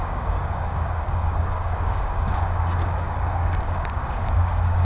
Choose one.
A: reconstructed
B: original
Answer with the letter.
A